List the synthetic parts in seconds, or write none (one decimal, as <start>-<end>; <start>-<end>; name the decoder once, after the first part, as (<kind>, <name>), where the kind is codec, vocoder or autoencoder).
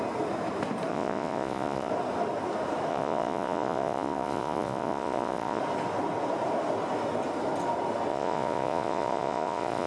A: 0.9-1.9 (vocoder, Vocos); 2.9-5.6; 8.1-9.9